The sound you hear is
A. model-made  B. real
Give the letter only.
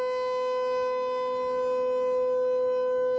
B